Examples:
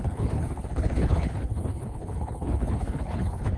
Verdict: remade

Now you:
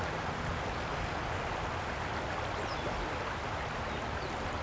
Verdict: recorded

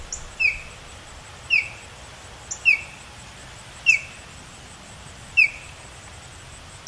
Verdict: recorded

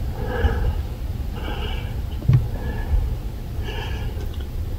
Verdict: recorded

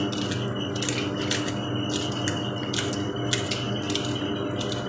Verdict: recorded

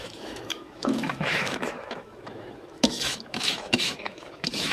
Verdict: remade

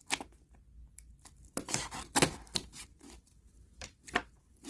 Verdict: recorded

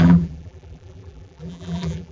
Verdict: remade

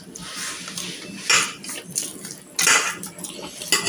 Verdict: recorded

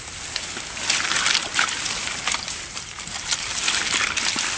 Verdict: recorded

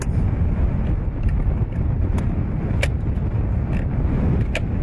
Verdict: recorded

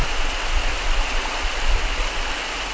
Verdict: recorded